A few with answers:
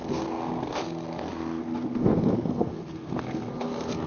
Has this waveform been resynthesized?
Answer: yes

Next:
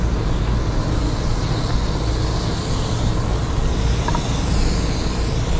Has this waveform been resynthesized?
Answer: no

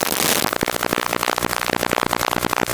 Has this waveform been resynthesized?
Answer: no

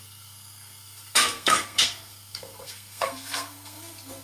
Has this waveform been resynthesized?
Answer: yes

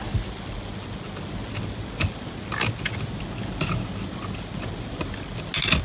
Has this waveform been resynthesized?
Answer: no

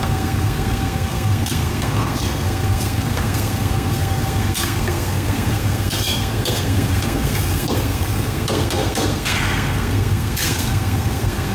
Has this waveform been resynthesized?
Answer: yes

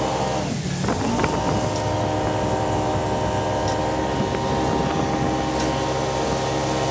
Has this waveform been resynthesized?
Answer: no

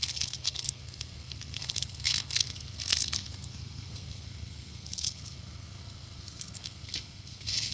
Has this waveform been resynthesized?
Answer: yes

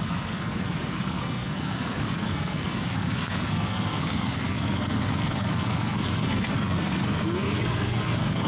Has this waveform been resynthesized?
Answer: yes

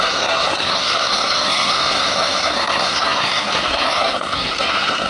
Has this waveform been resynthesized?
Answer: yes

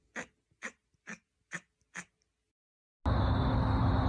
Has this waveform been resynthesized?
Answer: no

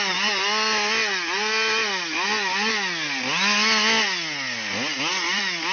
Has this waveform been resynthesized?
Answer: no